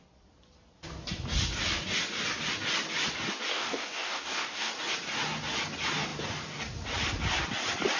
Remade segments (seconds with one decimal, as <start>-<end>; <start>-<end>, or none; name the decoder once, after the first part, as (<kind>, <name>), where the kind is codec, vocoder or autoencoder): 3.5-4.7 (codec, DAC)